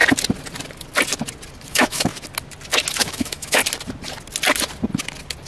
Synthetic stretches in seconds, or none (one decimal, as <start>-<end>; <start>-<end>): 1.7-2.1; 2.9-3.6